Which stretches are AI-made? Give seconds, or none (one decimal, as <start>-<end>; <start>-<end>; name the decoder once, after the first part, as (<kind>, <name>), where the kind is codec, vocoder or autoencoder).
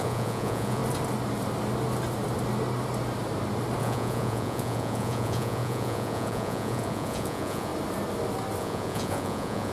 0.0-0.8 (vocoder, Vocos); 3.8-7.7; 8.6-9.7